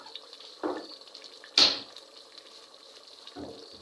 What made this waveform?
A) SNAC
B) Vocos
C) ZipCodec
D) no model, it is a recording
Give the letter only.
D